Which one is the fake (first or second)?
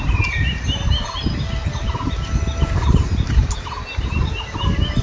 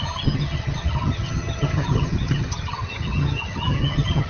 second